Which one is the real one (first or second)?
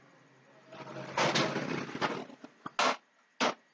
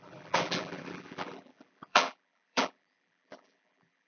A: first